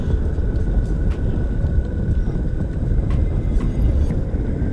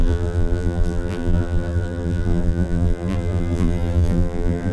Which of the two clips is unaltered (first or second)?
first